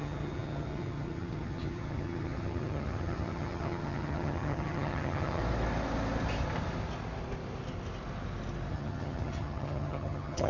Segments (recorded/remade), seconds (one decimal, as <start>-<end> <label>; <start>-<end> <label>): 0.0-5.4 remade; 5.4-8.7 recorded; 8.7-10.5 remade